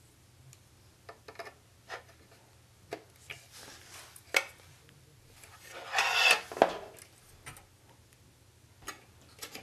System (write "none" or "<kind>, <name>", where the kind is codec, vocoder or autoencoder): none